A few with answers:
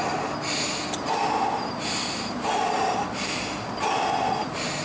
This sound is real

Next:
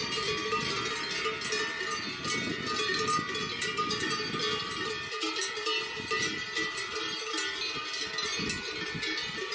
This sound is real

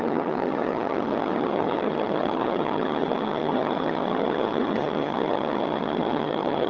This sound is fake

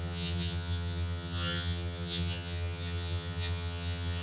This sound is fake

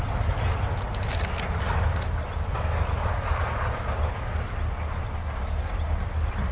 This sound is real